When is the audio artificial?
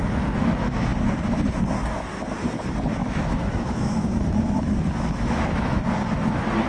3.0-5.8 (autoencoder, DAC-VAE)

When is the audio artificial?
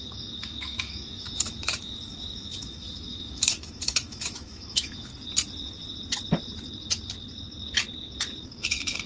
0.0-5.1 (autoencoder, DAC-VAE); 8.6-9.1